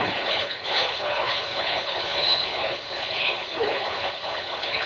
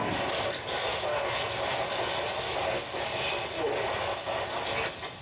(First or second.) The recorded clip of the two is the second